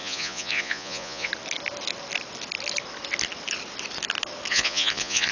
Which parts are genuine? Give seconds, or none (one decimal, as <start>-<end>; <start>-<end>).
1.3-4.5

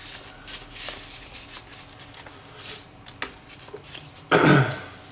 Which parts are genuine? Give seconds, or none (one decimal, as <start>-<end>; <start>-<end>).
0.0-5.1